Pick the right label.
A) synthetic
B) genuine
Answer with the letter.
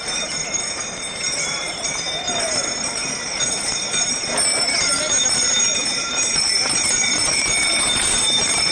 A